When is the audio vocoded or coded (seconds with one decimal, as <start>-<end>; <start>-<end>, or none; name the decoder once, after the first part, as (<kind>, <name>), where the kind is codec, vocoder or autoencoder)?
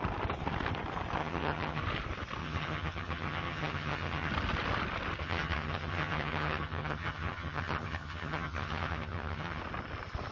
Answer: 1.2-1.8 (vocoder, HiFi-GAN); 2.4-4.3; 5.2-9.6